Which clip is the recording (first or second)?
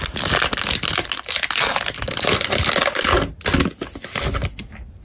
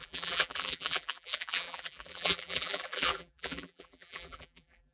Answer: first